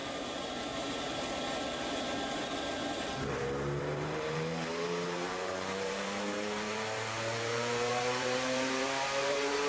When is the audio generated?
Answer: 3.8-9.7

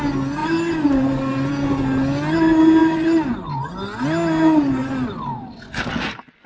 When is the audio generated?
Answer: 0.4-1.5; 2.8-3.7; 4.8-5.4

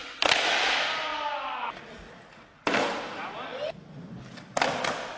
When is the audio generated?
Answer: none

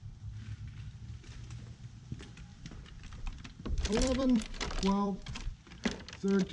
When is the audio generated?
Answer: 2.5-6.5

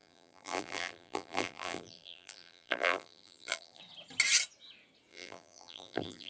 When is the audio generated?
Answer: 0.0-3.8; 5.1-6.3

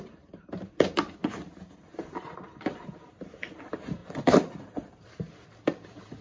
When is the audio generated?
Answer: 0.0-6.2

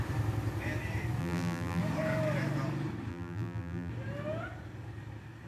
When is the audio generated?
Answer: 1.2-1.8; 3.1-3.9